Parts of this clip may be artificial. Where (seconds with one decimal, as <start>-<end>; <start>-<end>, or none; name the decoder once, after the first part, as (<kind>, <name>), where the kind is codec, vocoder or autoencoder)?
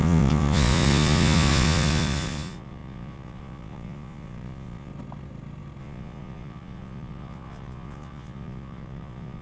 0.0-4.9 (vocoder, Vocos); 5.8-9.4